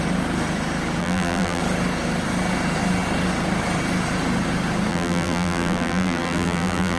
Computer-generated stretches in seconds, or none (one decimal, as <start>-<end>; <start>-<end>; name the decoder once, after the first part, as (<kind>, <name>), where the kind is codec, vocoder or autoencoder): 1.0-1.6 (vocoder, BigVGAN v2); 4.9-7.0